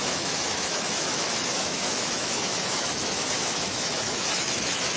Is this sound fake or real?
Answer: fake